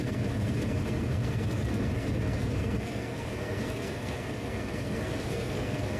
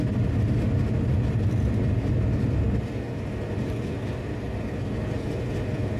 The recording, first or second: second